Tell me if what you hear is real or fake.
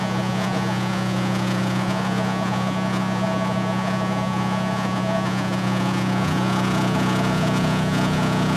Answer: fake